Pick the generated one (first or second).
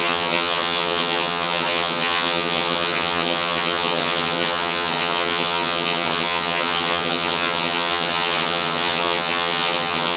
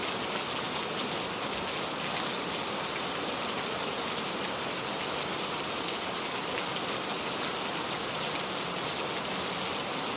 first